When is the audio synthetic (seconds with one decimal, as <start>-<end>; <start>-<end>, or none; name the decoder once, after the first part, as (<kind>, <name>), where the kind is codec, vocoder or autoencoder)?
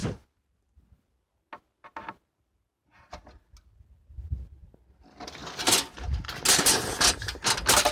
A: none